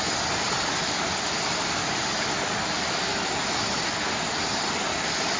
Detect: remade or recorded remade